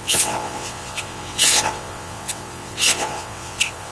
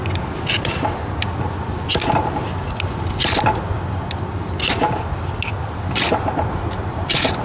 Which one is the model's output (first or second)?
first